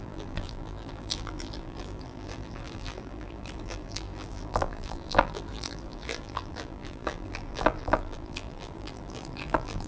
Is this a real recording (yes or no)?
no